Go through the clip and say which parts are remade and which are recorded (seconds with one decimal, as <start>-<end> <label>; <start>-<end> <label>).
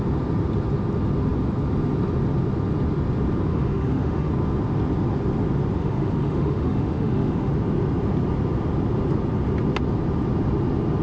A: 0.0-3.5 recorded; 3.5-4.3 remade; 4.3-5.8 recorded; 5.8-7.5 remade; 7.5-11.0 recorded